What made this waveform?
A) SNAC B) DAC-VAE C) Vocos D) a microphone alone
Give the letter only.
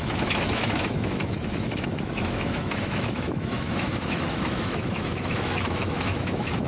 B